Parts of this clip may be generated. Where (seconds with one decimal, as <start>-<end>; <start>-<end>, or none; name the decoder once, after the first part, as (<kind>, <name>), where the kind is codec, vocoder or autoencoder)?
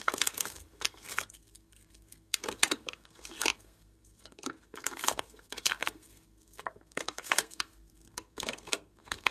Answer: 0.0-9.3 (codec, SNAC)